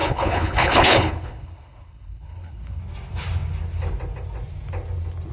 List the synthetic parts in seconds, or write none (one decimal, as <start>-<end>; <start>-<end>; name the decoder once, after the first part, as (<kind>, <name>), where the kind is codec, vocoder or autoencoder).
0.0-2.8 (codec, HILCodec)